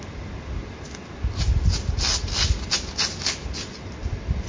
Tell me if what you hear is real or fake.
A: real